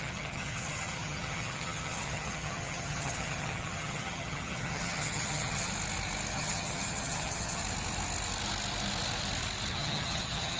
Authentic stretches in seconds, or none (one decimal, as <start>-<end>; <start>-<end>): 5.7-6.3; 7.6-9.7